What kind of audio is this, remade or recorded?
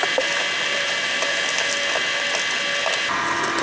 recorded